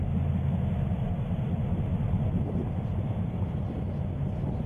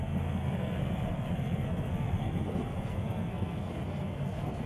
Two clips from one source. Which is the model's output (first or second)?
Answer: second